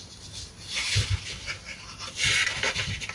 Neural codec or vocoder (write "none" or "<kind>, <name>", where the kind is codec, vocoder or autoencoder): none